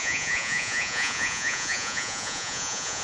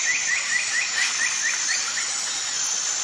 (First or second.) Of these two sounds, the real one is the second